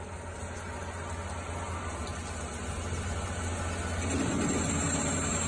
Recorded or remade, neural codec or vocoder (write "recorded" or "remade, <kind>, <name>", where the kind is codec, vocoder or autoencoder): recorded